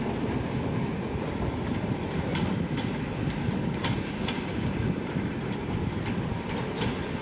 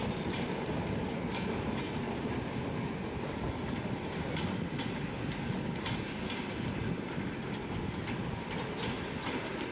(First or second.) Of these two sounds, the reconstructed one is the first